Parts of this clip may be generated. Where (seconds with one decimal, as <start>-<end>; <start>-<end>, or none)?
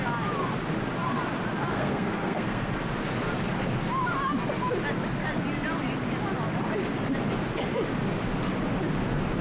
1.7-2.7